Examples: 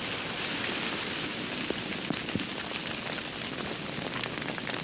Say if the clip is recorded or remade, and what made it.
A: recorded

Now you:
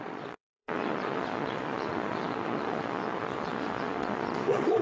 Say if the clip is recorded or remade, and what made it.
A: remade, vocoder, Vocos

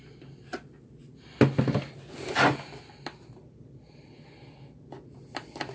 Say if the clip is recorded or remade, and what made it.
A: recorded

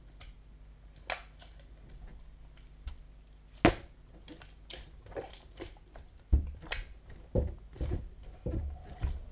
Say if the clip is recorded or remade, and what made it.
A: recorded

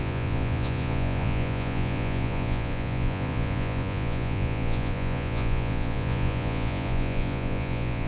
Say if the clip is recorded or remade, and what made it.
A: remade, vocoder, Vocos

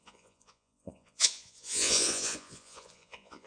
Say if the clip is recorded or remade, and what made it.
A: remade, vocoder, Vocos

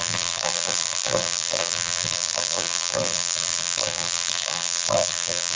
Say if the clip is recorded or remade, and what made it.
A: remade, vocoder, BigVGAN v2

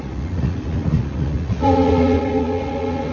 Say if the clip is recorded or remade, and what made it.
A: remade, vocoder, Vocos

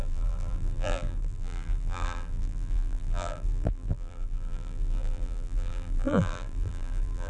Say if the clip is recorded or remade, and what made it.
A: remade, vocoder, BigVGAN v2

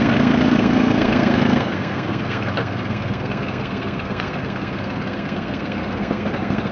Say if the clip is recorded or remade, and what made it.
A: remade, codec, SNAC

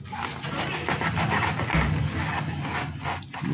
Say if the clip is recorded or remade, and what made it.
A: recorded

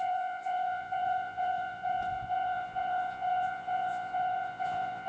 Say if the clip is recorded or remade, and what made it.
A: remade, vocoder, Vocos